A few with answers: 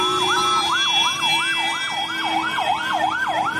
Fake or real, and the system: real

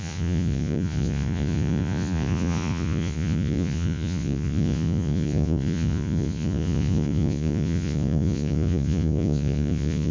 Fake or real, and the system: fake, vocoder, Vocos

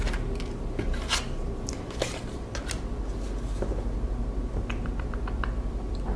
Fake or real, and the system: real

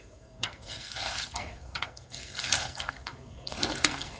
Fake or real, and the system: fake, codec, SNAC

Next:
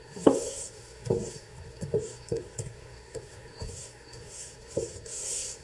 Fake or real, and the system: fake, codec, SNAC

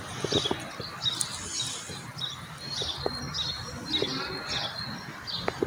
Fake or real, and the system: real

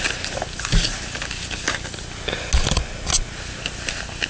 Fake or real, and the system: real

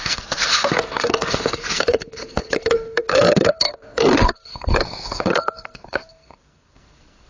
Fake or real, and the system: fake, codec, SNAC